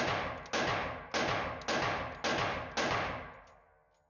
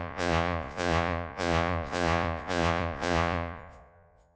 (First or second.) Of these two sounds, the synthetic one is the second